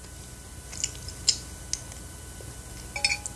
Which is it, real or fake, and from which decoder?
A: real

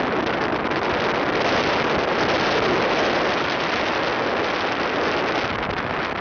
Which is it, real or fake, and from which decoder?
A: real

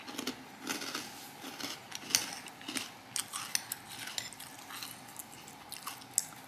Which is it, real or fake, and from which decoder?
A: real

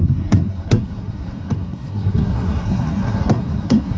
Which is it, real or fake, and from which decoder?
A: fake, codec, SNAC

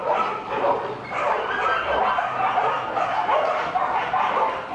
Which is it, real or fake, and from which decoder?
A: real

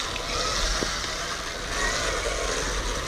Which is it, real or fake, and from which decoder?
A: real